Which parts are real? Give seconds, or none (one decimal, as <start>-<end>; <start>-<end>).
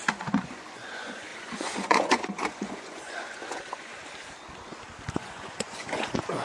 3.9-5.1